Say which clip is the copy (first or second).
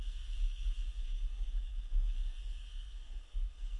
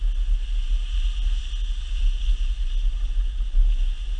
first